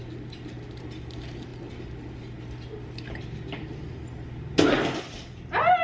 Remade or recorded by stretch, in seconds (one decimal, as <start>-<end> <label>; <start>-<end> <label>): 0.0-5.8 recorded